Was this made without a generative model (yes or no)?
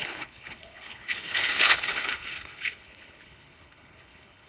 no